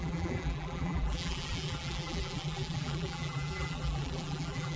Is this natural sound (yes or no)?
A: no